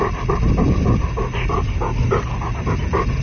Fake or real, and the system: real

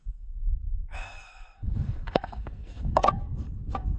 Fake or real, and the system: fake, codec, SNAC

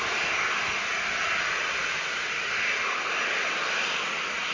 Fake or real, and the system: real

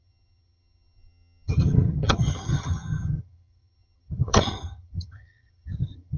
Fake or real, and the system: fake, vocoder, HiFi-GAN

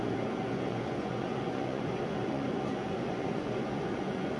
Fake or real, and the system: fake, vocoder, Vocos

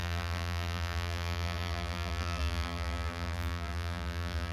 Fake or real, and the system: fake, vocoder, BigVGAN v2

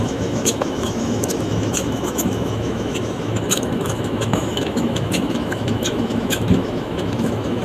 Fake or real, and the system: fake, autoencoder, DAC-VAE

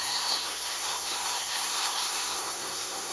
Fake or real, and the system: fake, codec, SNAC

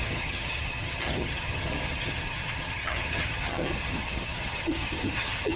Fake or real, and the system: fake, vocoder, HiFi-GAN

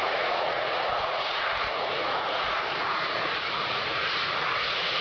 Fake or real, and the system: fake, vocoder, Vocos